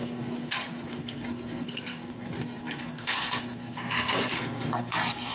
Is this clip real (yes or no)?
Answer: no